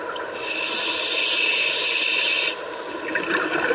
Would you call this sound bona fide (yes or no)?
yes